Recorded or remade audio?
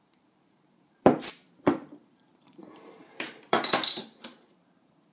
remade